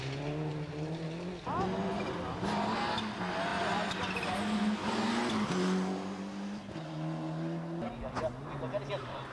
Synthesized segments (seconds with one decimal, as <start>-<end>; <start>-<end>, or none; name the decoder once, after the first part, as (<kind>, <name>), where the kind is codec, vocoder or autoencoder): none